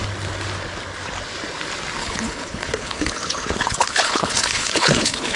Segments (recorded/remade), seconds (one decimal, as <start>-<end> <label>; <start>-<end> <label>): 0.0-2.0 recorded; 2.0-5.4 remade